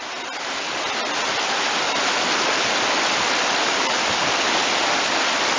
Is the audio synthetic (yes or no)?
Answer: no